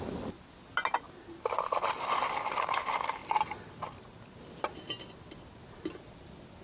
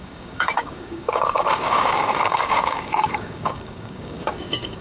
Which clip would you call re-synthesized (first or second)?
second